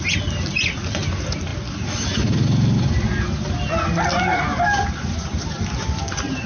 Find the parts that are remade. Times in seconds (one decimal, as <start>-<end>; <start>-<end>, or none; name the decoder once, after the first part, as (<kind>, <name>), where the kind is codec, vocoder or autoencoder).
none